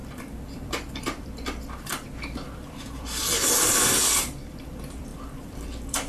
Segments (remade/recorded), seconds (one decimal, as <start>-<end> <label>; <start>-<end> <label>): 0.0-6.1 remade

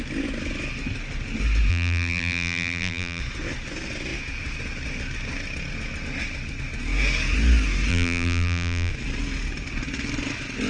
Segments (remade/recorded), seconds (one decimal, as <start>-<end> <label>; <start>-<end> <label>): 0.0-1.7 recorded; 1.7-3.2 remade; 3.2-7.9 recorded; 7.9-8.9 remade; 8.9-10.7 recorded

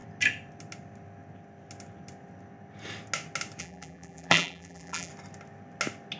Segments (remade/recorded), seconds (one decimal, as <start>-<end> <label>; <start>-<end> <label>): 0.0-3.6 recorded; 3.6-5.1 remade; 5.1-6.2 recorded